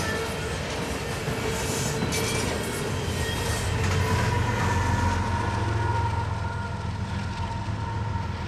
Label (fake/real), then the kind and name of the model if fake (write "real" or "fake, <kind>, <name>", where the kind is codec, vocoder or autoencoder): real